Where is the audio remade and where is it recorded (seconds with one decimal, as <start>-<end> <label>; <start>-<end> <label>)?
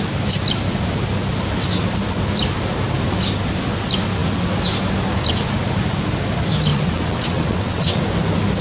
0.0-6.7 recorded; 6.7-8.0 remade; 8.0-8.6 recorded